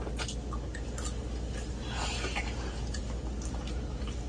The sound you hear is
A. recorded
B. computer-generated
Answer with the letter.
A